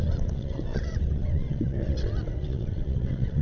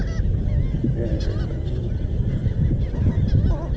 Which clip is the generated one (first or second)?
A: first